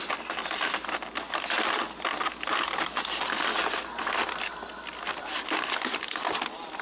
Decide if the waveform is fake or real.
real